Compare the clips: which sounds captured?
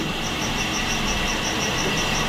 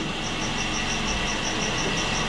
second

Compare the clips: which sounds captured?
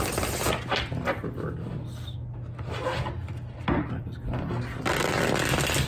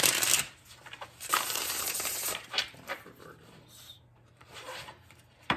first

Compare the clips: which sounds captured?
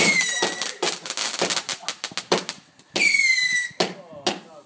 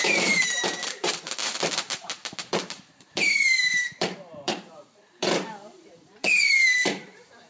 first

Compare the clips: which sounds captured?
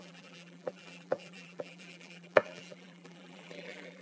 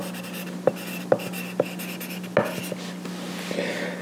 second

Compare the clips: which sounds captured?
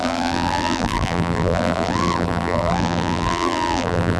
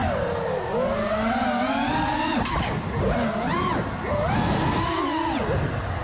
second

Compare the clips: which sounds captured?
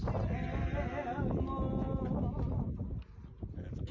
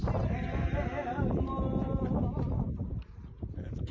first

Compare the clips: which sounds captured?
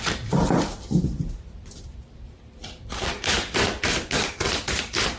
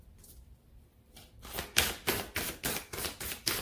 second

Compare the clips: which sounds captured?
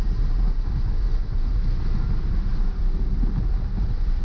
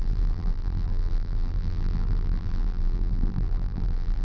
first